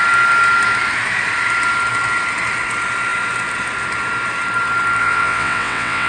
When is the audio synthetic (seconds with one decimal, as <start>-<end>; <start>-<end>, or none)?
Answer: 5.0-6.1